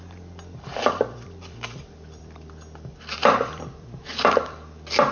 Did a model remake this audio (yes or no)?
yes